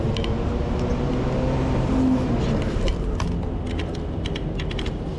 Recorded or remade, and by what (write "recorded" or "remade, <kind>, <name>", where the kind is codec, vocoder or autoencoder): recorded